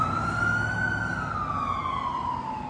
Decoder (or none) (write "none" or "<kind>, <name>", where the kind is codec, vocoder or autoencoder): none